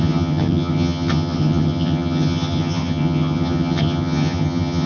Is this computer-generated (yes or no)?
yes